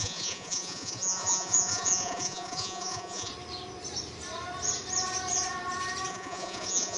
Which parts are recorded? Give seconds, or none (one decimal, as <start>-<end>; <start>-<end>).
3.3-6.1